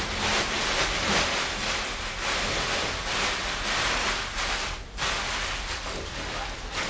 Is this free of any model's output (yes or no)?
yes